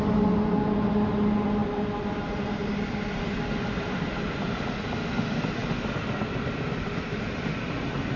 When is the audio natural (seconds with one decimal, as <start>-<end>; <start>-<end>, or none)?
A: 0.0-8.2